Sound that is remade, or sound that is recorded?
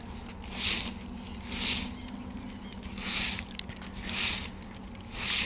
recorded